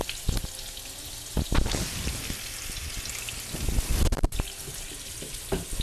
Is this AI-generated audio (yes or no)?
no